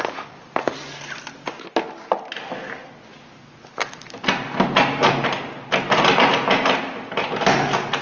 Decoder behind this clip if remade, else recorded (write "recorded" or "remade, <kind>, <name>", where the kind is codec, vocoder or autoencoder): recorded